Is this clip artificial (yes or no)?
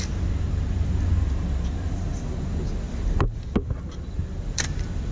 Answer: no